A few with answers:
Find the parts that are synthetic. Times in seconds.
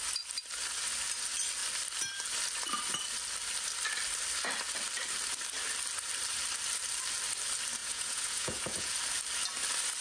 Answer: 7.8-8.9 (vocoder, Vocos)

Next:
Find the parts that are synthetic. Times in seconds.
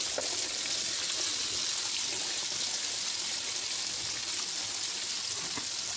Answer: none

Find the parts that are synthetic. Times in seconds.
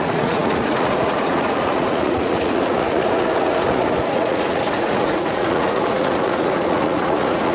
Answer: 0.0-7.5 (vocoder, Vocos)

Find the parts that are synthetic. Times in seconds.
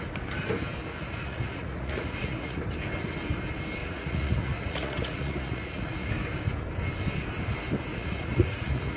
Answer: 0.9-2.6 (vocoder, Vocos); 3.8-6.1; 7.9-9.0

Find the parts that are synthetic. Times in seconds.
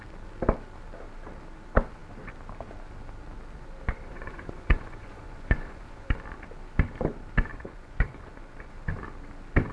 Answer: 4.1-6.1 (vocoder, Vocos); 7.5-8.7